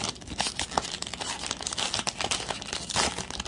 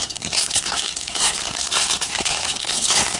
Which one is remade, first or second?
second